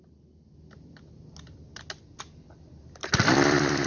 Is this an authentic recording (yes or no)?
yes